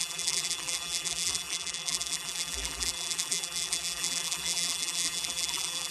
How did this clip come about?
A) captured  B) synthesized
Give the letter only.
B